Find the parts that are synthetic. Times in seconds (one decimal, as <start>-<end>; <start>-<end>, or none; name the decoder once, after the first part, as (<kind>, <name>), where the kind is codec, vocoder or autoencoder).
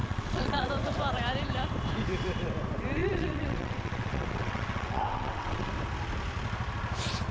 0.0-0.7 (vocoder, WaveNeXt); 3.0-5.7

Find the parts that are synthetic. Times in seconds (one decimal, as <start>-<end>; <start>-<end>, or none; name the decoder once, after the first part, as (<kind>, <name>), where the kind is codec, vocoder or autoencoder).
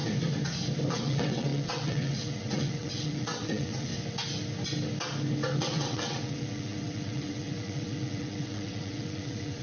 0.9-3.9 (vocoder, WaveNeXt); 5.6-9.6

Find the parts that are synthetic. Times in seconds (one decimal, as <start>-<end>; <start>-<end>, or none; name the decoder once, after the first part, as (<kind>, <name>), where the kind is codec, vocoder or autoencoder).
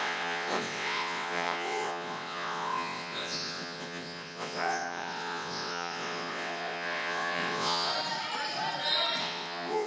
0.0-7.9 (vocoder, WaveNeXt); 9.2-9.9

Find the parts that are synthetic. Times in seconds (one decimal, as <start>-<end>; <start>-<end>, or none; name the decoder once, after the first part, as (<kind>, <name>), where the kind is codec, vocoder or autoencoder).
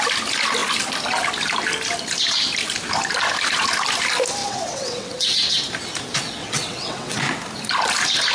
4.4-5.6 (vocoder, WaveNeXt); 6.4-7.2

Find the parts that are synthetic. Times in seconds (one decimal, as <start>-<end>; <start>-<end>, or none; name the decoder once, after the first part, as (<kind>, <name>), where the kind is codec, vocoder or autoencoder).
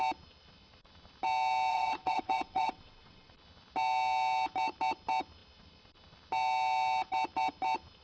1.7-3.3 (vocoder, WaveNeXt)